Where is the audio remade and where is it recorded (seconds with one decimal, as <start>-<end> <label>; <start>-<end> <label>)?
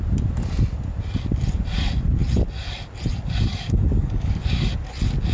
0.0-3.5 recorded; 3.5-4.7 remade; 4.7-5.3 recorded